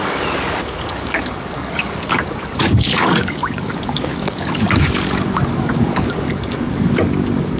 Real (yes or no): no